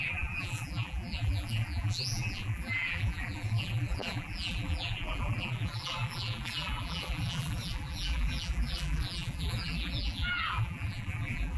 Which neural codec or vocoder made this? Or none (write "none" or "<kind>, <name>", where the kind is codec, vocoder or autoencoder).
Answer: vocoder, BigVGAN v2